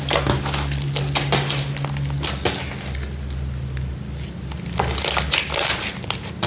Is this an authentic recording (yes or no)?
yes